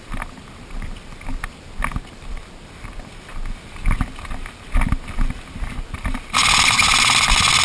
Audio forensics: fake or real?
real